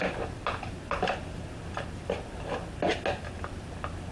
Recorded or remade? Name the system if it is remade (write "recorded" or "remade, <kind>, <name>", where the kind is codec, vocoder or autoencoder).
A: recorded